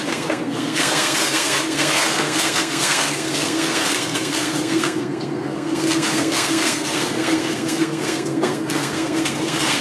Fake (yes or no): yes